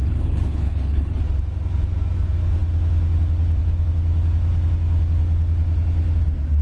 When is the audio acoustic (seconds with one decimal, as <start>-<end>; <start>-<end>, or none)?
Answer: 1.2-6.6